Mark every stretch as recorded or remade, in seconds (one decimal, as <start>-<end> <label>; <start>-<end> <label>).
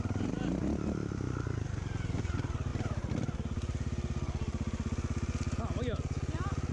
0.0-6.7 recorded